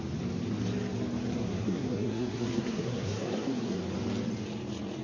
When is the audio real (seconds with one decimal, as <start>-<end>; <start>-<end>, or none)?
0.0-1.3; 3.8-5.0